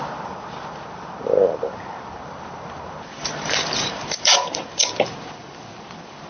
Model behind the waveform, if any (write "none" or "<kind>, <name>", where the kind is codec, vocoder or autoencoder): vocoder, BigVGAN v2